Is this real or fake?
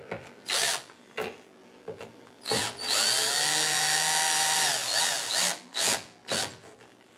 fake